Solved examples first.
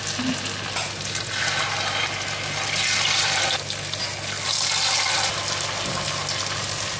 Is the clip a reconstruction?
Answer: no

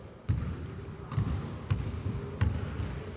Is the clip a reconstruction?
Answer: no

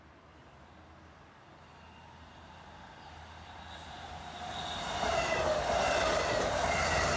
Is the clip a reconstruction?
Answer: no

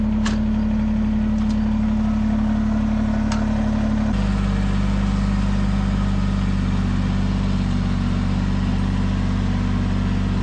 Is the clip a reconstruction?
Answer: no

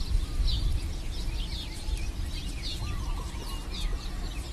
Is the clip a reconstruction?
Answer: no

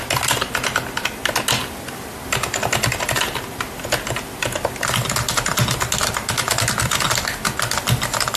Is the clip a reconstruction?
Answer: no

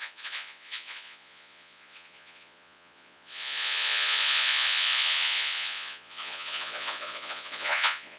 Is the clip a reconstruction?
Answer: yes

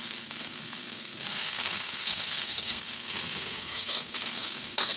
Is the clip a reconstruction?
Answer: yes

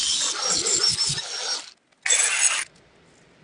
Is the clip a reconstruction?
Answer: no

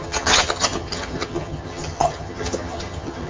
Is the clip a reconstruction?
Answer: yes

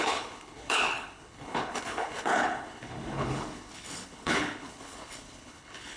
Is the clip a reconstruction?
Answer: yes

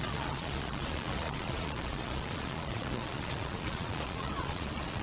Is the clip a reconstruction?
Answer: yes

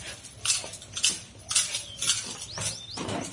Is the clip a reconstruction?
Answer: no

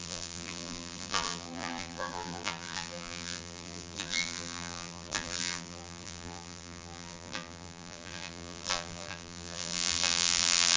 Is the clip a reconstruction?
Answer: yes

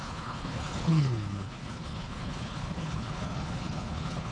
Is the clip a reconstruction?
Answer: yes